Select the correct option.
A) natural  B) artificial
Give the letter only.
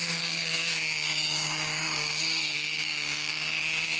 B